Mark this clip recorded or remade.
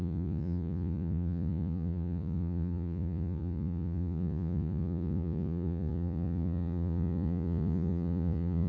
remade